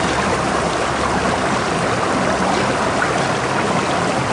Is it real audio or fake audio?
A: real